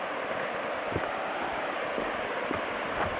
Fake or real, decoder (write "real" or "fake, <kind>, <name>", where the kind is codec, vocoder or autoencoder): real